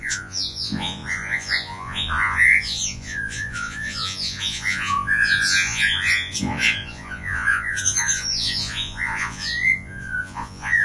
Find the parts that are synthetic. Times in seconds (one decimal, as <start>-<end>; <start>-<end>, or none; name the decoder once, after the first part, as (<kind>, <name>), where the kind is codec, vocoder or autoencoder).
0.0-10.8 (vocoder, Vocos)